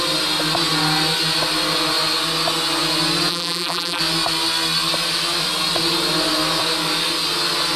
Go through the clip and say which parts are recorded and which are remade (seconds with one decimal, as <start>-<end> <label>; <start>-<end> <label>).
0.0-3.3 recorded; 3.3-4.0 remade; 4.0-7.8 recorded